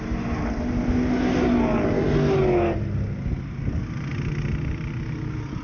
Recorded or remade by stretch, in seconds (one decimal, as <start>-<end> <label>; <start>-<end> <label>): 0.0-5.6 recorded